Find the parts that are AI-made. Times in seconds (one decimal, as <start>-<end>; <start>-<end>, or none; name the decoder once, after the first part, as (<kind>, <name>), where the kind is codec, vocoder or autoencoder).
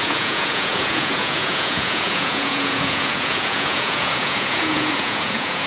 0.0-5.7 (vocoder, Vocos)